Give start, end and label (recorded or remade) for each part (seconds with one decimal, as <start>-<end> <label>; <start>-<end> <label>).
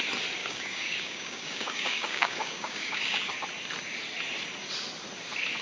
0.0-0.4 recorded; 0.4-3.3 remade; 3.3-5.6 recorded